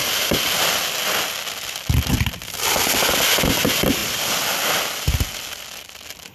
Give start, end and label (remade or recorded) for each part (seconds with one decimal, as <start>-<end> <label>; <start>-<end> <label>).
0.0-6.3 recorded